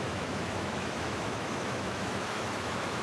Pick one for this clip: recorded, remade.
remade